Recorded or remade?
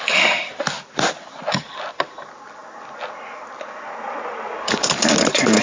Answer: recorded